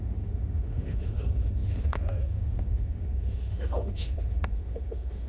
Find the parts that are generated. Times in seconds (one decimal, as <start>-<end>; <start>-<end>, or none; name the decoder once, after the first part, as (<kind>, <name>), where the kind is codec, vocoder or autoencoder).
0.0-5.3 (autoencoder, DAC-VAE)